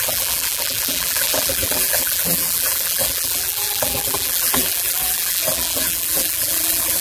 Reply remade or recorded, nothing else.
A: remade